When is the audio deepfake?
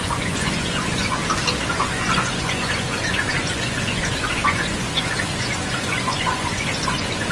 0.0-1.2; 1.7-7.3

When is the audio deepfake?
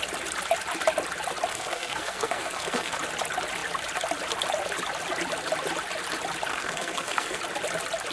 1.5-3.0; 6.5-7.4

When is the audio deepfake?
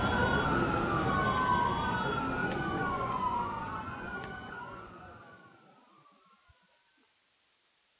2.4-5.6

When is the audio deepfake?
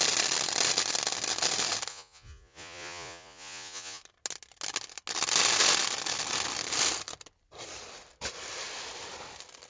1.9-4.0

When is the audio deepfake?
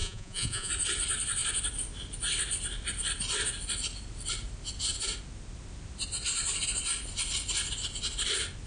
0.0-0.7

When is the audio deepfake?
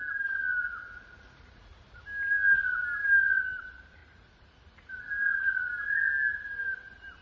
0.6-2.0; 4.0-5.7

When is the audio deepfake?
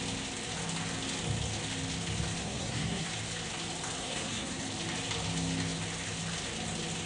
2.4-3.1; 4.0-4.6